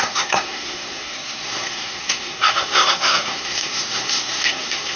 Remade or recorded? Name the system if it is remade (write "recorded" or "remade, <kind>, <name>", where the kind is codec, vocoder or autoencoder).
remade, codec, SNAC